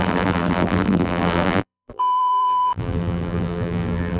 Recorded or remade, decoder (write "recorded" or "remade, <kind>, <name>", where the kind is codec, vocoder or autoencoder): remade, vocoder, BigVGAN v2